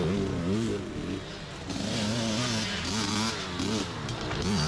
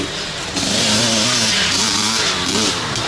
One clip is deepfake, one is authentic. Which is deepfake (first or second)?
second